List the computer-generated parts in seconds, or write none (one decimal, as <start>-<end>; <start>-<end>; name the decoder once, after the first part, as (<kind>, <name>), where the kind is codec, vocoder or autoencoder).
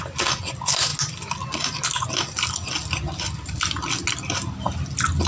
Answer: none